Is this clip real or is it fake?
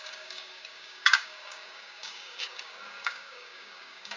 fake